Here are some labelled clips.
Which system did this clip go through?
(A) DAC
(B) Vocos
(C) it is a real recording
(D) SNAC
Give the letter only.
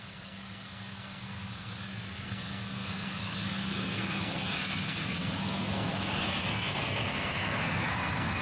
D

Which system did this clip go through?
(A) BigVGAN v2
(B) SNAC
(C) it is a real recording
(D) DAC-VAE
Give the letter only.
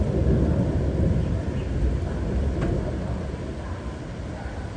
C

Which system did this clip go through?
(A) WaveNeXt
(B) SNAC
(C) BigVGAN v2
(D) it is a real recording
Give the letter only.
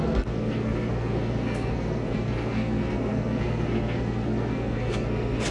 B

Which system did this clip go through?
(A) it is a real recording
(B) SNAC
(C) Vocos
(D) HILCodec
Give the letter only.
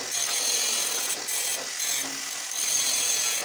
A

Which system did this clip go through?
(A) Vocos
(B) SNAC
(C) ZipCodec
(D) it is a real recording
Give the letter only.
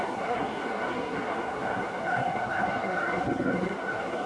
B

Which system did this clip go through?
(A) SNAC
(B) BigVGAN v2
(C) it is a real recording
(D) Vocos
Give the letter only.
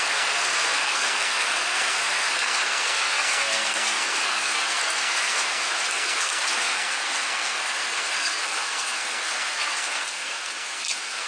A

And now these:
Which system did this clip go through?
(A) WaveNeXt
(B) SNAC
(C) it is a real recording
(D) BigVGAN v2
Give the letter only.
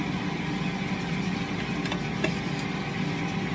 C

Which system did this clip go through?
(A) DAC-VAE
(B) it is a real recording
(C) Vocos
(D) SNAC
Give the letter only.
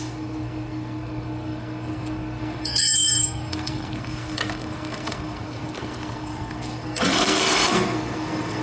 D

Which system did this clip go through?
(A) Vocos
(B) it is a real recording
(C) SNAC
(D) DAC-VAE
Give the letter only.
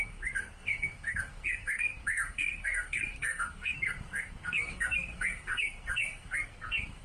C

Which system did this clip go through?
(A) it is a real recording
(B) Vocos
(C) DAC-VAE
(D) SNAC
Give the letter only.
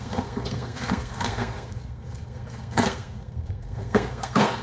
D